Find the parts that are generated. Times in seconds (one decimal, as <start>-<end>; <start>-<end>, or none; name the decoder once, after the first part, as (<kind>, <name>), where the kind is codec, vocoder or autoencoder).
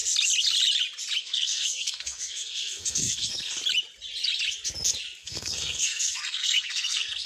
1.2-3.6 (codec, SNAC); 5.2-7.3